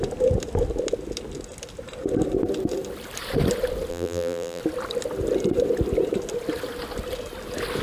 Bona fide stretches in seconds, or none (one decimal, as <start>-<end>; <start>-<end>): 0.0-3.9; 4.6-7.8